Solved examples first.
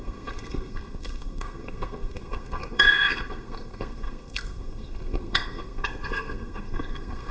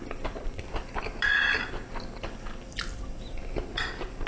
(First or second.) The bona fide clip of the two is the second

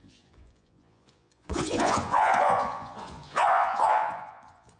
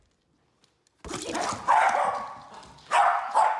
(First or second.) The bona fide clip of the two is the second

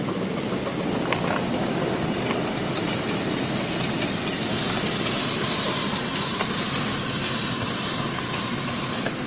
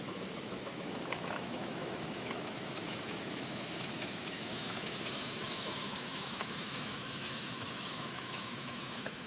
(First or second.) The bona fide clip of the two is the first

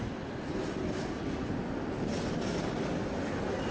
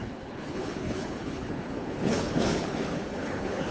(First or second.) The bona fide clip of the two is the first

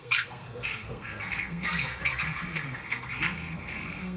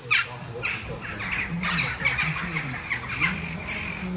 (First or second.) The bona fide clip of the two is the second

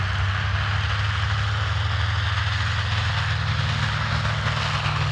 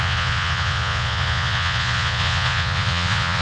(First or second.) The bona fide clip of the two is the first